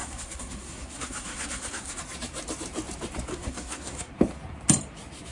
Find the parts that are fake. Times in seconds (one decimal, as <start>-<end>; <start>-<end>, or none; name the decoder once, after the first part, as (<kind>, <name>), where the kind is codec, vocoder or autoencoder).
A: 0.0-2.0 (codec, SNAC); 3.3-4.1